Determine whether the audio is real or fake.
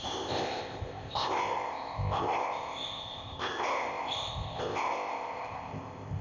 fake